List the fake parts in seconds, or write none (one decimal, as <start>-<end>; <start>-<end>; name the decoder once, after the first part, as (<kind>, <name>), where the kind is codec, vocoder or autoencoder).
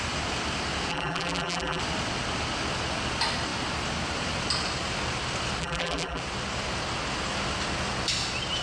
0.9-1.8 (vocoder, BigVGAN v2); 5.6-6.2